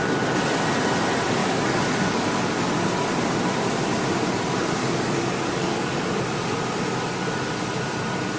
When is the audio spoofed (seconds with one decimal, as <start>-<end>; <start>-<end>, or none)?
1.4-2.7; 4.8-6.0